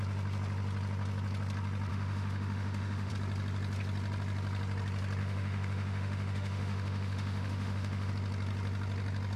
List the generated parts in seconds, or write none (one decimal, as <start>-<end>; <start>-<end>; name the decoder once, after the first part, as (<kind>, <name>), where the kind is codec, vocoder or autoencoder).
1.9-3.1 (autoencoder, DAC-VAE); 5.2-8.1